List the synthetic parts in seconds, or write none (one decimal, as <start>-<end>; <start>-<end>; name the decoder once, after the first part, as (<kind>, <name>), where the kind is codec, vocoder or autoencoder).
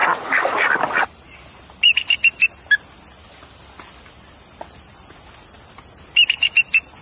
0.0-0.7 (vocoder, BigVGAN v2)